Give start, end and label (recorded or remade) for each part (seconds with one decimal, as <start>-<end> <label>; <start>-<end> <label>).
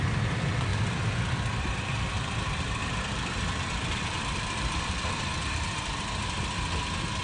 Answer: 0.0-0.7 recorded; 0.7-4.8 remade; 4.8-5.4 recorded; 5.4-6.5 remade; 6.5-7.2 recorded